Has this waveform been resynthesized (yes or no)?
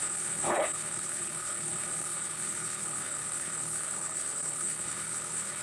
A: yes